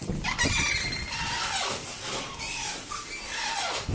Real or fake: real